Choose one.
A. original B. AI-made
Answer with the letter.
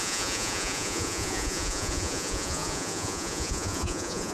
B